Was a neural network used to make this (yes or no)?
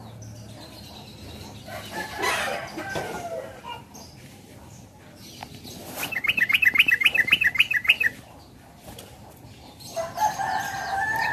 yes